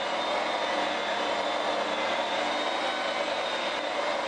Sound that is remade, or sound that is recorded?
recorded